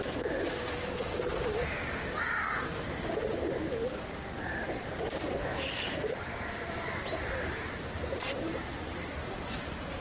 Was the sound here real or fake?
fake